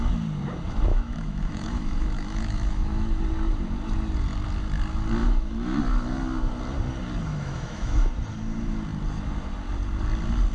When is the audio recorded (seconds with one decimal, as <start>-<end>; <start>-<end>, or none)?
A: 0.0-0.9; 3.2-5.2; 5.8-7.3; 8.1-10.5